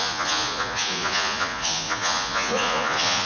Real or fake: fake